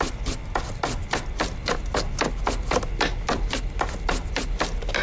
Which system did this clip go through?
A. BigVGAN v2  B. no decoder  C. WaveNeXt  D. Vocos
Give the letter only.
B